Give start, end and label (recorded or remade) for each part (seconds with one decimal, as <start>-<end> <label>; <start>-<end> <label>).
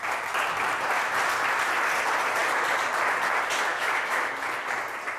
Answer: 0.0-3.7 recorded; 3.7-4.3 remade; 4.3-5.2 recorded